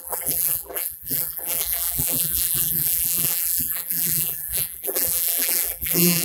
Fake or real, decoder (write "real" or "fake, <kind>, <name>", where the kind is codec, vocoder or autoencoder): fake, vocoder, BigVGAN v2